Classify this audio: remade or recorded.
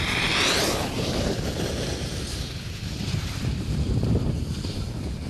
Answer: remade